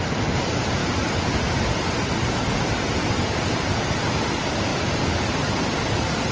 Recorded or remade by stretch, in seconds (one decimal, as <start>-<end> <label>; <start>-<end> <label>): 0.0-6.3 recorded